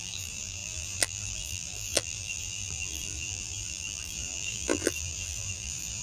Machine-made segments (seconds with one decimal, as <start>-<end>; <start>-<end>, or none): 0.0-6.0